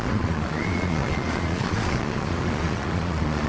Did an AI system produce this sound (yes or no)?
yes